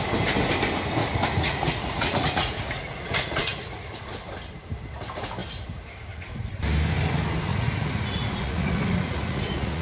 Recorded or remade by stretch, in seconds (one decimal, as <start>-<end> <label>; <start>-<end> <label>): 0.0-1.0 recorded; 1.0-4.1 remade; 4.1-7.5 recorded; 7.5-9.8 remade